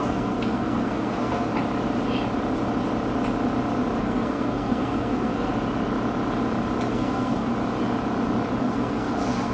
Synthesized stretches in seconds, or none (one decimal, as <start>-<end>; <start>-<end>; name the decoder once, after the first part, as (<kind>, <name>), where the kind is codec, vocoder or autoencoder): 0.0-1.5 (codec, SNAC); 4.0-5.5; 6.9-7.5; 8.6-9.5